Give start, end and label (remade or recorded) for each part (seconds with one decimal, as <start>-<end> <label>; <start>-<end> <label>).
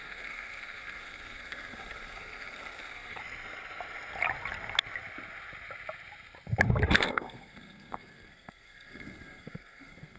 0.0-3.2 remade; 3.2-6.9 recorded; 6.9-10.2 remade